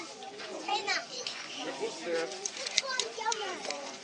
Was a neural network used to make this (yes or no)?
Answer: yes